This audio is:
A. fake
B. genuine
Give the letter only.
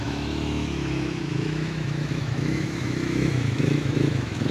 A